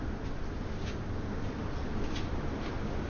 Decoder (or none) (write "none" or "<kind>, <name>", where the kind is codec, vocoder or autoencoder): none